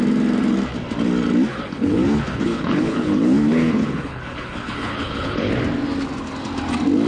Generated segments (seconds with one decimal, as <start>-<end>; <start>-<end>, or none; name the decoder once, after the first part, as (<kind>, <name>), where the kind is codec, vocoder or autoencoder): 1.5-5.5 (codec, HILCodec)